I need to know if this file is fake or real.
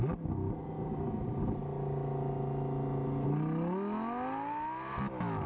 real